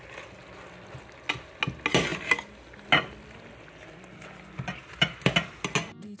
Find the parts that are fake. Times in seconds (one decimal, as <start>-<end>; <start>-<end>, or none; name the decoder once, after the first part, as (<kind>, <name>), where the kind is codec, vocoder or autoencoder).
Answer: none